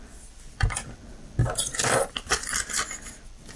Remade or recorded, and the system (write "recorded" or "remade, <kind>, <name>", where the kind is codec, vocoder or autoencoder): recorded